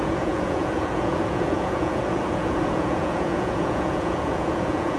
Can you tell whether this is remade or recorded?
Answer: remade